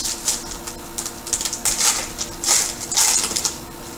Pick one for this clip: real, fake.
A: real